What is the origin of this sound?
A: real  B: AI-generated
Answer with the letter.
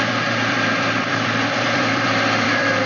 B